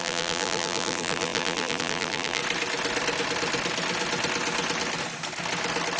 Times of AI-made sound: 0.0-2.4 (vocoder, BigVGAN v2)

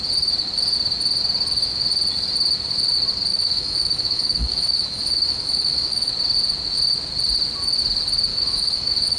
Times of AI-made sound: 3.3-6.1 (autoencoder, DAC-VAE); 8.3-9.2